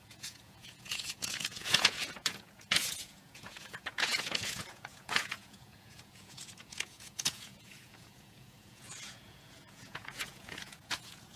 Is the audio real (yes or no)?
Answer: no